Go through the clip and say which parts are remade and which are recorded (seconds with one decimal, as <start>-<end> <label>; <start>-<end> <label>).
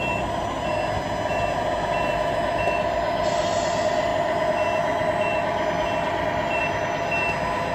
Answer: 0.0-7.7 recorded